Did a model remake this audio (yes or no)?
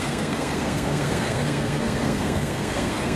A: yes